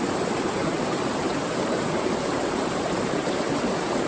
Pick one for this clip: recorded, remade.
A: remade